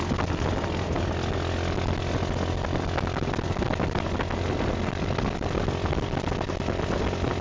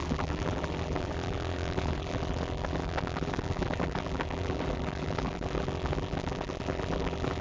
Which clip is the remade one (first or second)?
second